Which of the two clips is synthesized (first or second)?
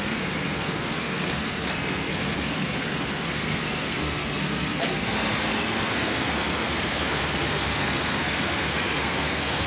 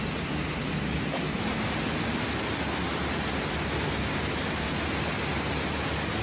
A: first